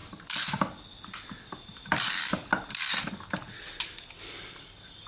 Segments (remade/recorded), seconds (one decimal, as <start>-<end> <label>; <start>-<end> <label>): 0.0-3.1 remade; 3.1-5.1 recorded